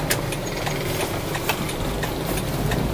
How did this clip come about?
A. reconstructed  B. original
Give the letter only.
B